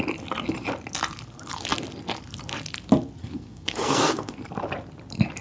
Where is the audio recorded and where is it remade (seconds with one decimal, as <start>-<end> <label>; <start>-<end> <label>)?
0.0-3.2 recorded; 3.2-4.5 remade; 4.5-5.4 recorded